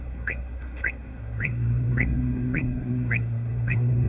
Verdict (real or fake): fake